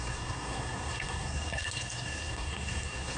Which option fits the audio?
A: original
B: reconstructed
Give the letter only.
B